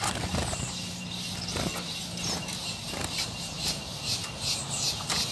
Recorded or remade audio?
recorded